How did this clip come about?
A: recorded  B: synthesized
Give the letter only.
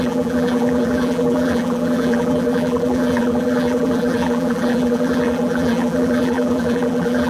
B